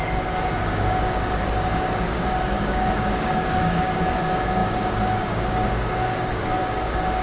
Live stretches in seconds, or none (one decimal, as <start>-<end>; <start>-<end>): none